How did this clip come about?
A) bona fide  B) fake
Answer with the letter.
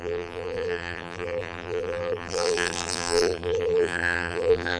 B